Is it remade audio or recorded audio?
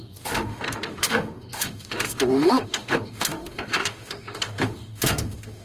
remade